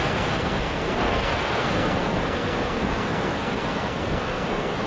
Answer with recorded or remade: remade